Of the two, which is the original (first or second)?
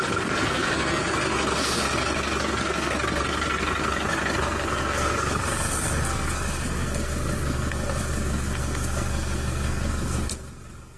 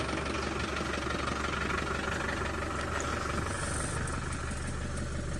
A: second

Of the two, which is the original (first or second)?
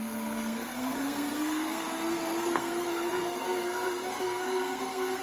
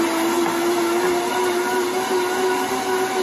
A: second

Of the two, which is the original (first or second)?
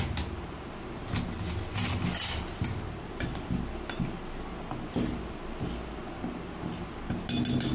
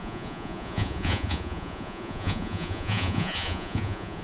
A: first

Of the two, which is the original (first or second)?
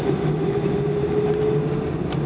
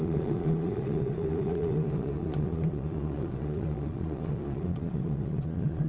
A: first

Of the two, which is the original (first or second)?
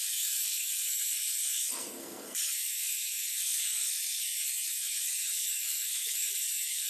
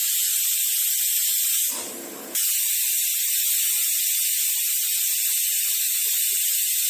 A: second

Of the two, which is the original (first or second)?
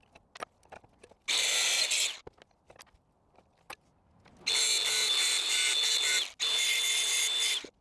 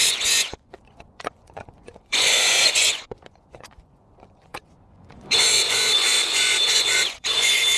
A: first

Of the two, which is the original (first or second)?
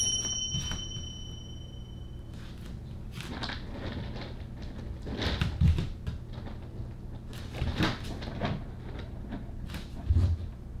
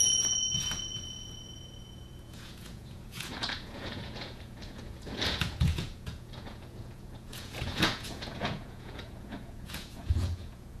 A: first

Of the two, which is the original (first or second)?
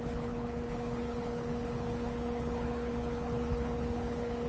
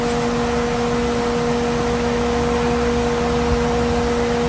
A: second